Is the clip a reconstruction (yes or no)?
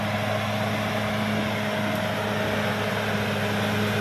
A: no